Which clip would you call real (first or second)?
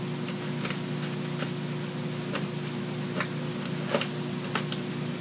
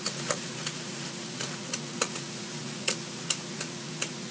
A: first